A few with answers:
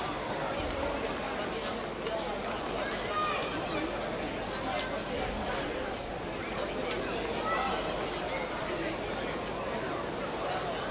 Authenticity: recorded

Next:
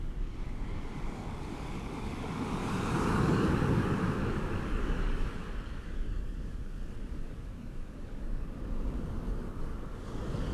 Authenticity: remade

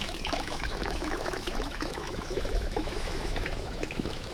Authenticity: remade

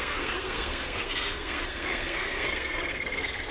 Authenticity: remade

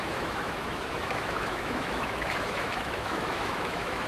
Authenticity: remade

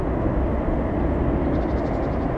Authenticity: recorded